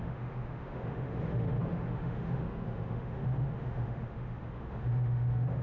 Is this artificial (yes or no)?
yes